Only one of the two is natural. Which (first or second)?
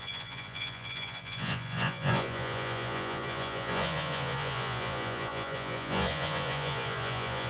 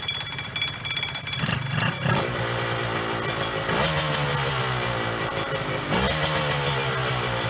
second